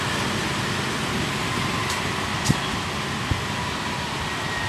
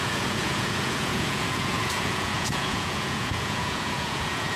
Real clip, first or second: first